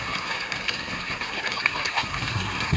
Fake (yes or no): yes